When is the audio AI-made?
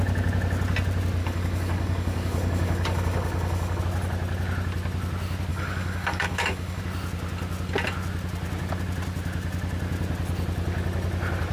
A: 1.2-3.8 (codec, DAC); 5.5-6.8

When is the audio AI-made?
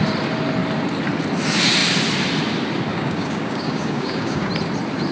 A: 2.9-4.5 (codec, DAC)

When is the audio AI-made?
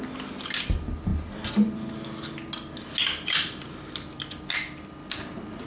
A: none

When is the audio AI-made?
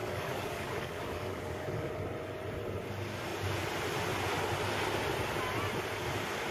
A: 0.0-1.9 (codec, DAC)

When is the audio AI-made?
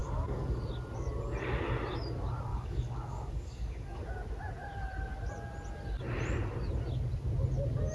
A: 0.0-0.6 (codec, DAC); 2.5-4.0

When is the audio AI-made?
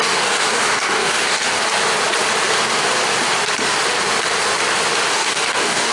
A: 0.0-1.6 (codec, DAC); 5.1-5.9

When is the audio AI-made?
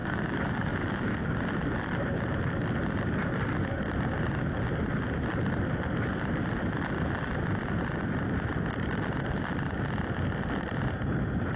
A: 0.0-1.1 (codec, DAC)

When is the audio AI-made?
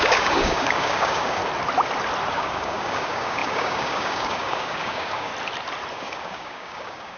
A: 0.0-1.4 (codec, DAC); 2.3-5.3; 5.9-7.2